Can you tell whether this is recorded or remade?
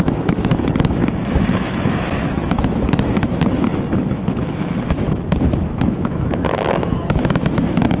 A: remade